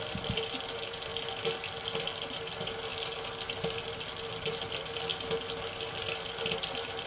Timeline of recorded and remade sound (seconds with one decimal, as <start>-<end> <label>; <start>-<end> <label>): 0.0-1.1 remade; 1.1-2.0 recorded; 2.0-2.9 remade; 2.9-4.3 recorded; 4.3-5.1 remade; 5.1-6.0 recorded; 6.0-7.1 remade